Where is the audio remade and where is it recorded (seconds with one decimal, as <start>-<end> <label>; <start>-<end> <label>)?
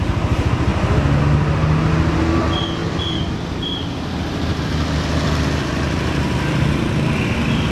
0.0-2.8 recorded; 2.8-7.2 remade; 7.2-7.7 recorded